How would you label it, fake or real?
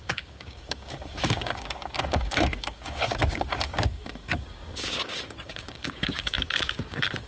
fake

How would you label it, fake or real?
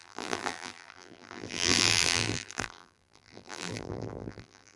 fake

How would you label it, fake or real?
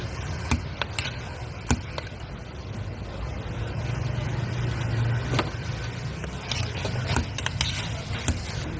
real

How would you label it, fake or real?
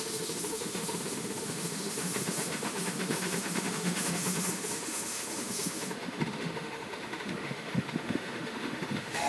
fake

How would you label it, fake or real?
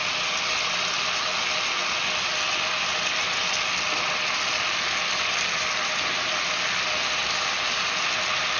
real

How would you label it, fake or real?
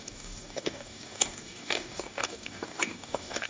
fake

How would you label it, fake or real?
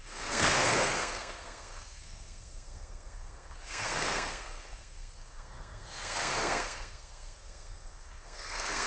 fake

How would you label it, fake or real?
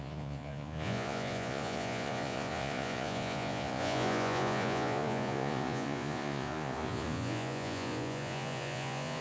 fake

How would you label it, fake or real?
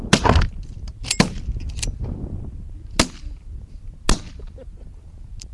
real